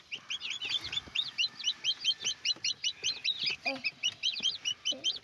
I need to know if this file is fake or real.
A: real